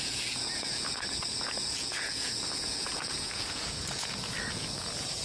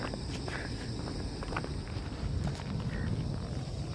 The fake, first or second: first